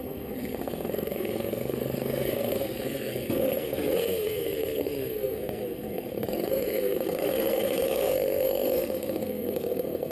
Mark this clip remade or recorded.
remade